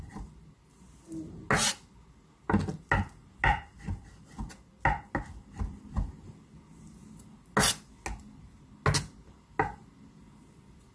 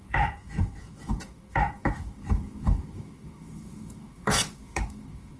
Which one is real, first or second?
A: first